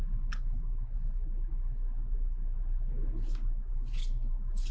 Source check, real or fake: real